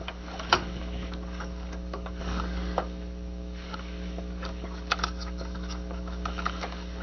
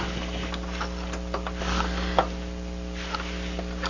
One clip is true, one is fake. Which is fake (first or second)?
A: first